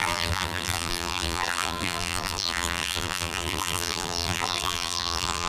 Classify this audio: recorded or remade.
remade